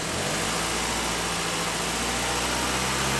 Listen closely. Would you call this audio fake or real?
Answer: real